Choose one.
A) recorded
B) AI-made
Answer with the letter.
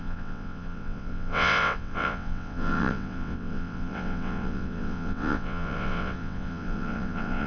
B